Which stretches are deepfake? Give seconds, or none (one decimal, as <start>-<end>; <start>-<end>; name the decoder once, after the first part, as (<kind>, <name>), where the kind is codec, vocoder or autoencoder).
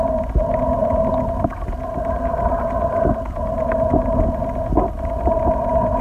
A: 0.8-4.4 (vocoder, BigVGAN v2)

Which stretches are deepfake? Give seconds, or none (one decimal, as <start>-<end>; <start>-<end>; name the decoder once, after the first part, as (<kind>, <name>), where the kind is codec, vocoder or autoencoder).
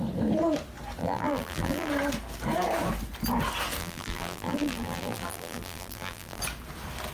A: 1.0-1.9 (vocoder, BigVGAN v2); 3.8-6.4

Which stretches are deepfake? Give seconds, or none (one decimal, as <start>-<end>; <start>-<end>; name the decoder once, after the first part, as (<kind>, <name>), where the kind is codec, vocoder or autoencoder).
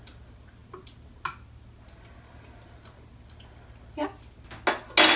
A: none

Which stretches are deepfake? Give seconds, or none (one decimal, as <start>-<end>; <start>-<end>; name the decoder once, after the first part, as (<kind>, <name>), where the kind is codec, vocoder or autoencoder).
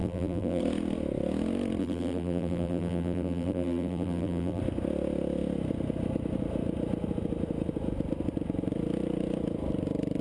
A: 0.0-0.6 (vocoder, BigVGAN v2); 1.8-4.6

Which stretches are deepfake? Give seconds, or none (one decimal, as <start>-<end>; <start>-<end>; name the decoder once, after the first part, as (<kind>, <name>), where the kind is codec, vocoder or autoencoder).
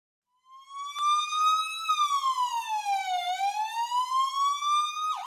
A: none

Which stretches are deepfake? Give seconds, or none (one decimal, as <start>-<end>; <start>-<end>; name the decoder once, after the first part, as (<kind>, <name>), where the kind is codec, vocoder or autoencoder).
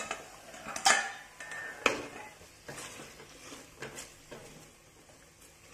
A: none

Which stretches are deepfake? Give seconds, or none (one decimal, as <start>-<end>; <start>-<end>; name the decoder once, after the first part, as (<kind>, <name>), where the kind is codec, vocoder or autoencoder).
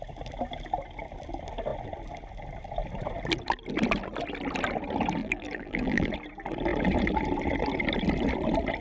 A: 5.2-6.1 (vocoder, BigVGAN v2)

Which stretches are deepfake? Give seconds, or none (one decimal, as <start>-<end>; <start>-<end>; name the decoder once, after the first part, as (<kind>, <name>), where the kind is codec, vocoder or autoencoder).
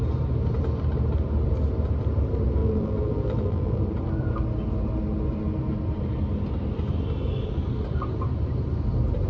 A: 2.6-3.8 (vocoder, BigVGAN v2)